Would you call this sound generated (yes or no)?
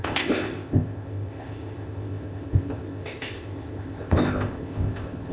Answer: yes